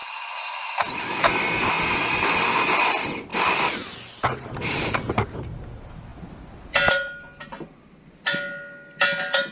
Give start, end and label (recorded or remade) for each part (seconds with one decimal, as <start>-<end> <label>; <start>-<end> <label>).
0.0-0.6 remade; 0.6-9.5 recorded